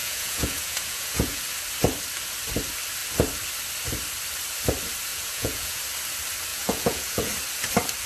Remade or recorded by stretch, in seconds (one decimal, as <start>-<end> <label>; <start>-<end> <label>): 0.0-1.4 remade; 1.4-5.1 recorded; 5.1-5.8 remade; 5.8-6.5 recorded; 6.5-7.3 remade; 7.3-8.1 recorded